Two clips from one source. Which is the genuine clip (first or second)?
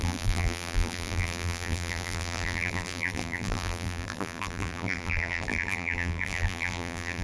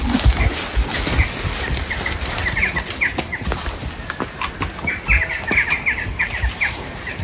second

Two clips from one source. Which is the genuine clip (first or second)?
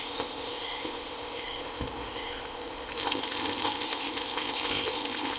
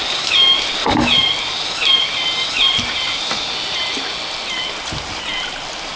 second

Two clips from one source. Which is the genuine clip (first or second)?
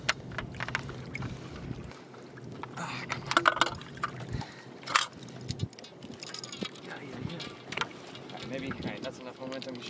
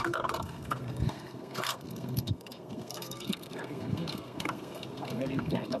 first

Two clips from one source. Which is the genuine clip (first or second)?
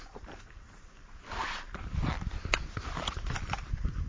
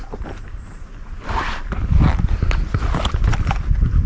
second